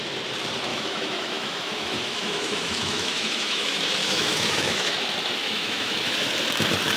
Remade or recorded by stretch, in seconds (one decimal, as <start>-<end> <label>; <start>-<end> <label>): 0.0-0.7 recorded; 0.7-4.9 remade; 4.9-5.4 recorded; 5.4-6.3 remade; 6.3-7.0 recorded